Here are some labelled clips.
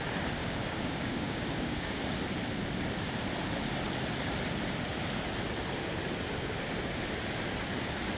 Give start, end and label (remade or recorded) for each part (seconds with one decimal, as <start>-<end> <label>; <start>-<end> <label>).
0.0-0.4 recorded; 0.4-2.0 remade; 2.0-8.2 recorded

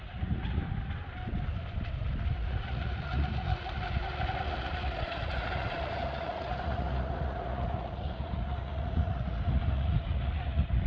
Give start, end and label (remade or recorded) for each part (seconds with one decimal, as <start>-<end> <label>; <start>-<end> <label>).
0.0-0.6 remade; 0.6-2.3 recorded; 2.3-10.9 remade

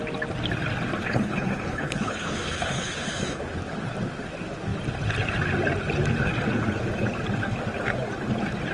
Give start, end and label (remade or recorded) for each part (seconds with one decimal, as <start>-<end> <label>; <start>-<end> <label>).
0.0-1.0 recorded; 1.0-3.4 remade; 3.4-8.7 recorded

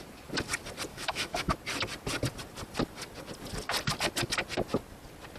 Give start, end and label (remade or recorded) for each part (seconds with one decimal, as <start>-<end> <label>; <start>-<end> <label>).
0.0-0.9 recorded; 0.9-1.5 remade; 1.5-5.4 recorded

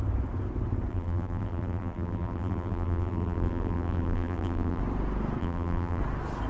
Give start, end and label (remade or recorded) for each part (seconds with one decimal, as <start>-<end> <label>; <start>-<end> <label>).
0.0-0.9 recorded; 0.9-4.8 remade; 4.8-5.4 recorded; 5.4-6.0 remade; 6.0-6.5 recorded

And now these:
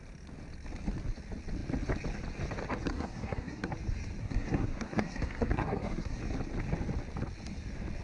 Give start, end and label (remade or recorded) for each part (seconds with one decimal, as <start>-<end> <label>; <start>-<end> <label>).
0.0-2.9 recorded; 2.9-3.7 remade; 3.7-4.2 recorded; 4.2-6.2 remade; 6.2-8.0 recorded